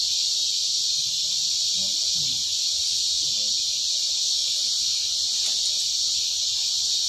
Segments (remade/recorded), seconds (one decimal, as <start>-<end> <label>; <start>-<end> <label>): 0.0-7.1 recorded